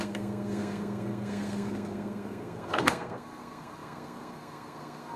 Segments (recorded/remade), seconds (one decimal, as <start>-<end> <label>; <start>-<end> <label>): 0.0-5.2 remade